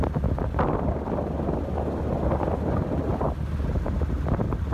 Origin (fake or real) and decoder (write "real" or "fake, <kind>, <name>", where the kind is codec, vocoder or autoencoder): real